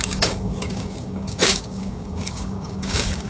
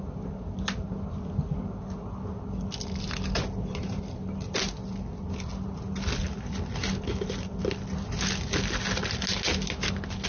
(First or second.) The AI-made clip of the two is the first